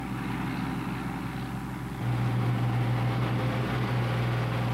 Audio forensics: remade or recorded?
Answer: recorded